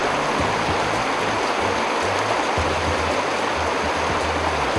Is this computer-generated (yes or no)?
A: no